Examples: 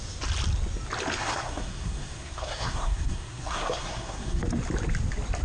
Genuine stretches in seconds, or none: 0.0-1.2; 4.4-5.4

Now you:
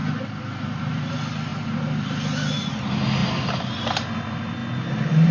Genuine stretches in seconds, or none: 1.1-3.2; 3.7-5.3

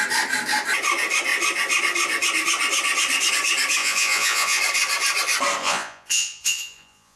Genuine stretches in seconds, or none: 0.0-3.8; 4.6-5.6

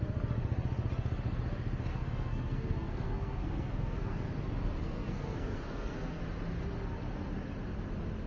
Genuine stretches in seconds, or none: 0.0-1.9; 4.3-4.8; 6.2-8.3